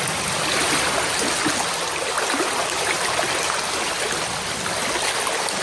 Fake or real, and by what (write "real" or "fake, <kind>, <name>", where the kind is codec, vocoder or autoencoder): real